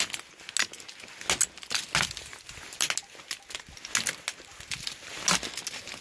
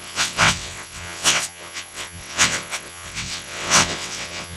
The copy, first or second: second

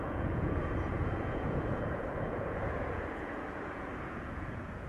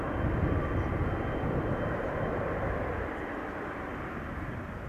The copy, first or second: first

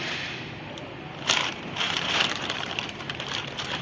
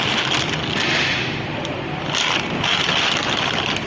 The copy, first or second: first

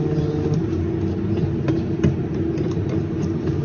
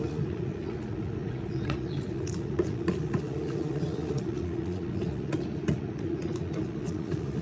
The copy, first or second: second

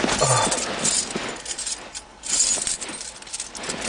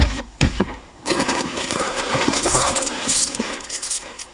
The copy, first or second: second